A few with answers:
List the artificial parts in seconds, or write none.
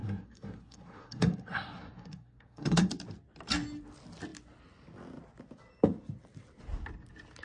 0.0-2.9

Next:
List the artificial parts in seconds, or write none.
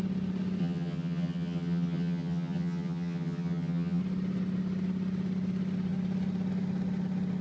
0.6-4.0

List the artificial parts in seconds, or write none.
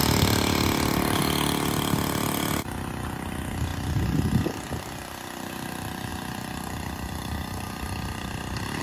3.7-5.5; 6.1-8.8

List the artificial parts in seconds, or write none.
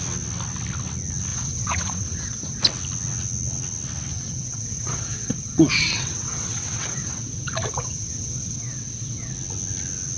1.3-2.6; 4.1-9.3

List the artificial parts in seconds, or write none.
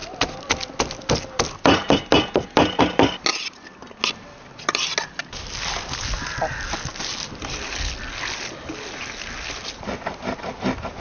none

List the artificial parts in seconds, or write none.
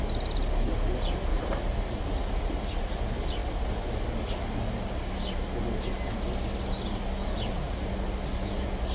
1.3-2.0; 7.2-7.9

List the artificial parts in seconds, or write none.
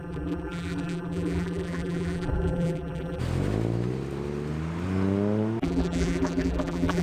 0.0-3.2; 5.6-7.0